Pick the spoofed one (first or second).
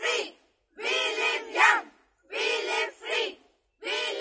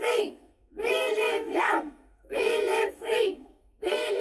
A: second